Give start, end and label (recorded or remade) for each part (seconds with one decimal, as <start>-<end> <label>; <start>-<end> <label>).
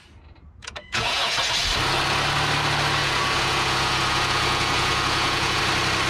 0.0-0.6 recorded; 0.6-1.4 remade; 1.4-3.0 recorded; 3.0-5.6 remade; 5.6-6.1 recorded